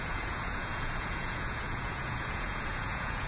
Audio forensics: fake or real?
fake